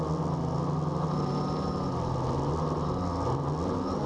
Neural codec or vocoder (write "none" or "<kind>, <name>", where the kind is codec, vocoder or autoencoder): none